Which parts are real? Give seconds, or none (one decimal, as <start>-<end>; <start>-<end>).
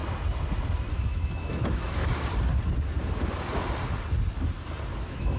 0.0-0.9; 2.0-5.0